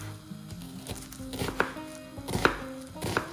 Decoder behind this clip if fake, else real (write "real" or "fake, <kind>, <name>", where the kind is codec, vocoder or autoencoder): real